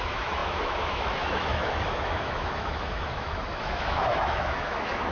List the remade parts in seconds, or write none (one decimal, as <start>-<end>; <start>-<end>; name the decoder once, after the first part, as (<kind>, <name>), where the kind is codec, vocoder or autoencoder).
0.0-5.1 (autoencoder, DAC-VAE)